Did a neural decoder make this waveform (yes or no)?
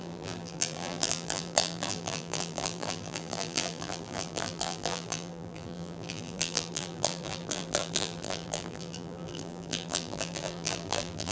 yes